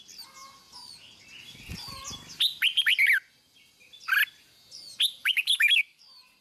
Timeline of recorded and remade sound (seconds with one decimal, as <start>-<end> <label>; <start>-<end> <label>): 0.0-5.2 recorded; 5.2-6.0 remade; 6.0-6.4 recorded